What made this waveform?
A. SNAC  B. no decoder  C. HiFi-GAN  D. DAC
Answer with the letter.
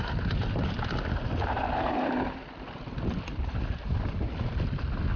B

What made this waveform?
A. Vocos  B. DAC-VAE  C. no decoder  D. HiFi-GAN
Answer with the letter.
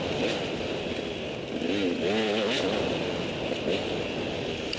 C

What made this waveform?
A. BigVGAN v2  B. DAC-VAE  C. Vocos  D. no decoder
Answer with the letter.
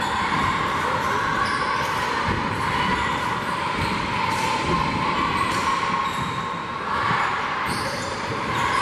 A